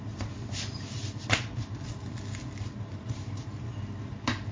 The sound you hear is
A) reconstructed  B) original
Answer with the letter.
B